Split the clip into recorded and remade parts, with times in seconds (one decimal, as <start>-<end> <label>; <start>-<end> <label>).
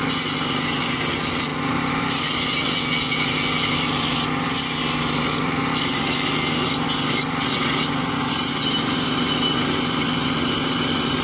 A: 0.0-11.2 recorded